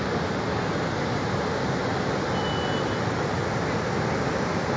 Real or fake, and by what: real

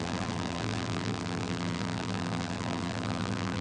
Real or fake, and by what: fake, vocoder, BigVGAN v2